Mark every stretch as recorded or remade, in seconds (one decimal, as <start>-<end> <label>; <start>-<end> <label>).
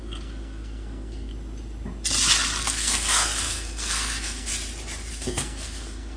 0.0-1.3 remade; 1.3-2.6 recorded; 2.6-4.5 remade; 4.5-5.1 recorded; 5.1-6.2 remade